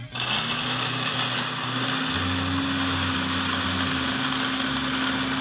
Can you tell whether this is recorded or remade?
recorded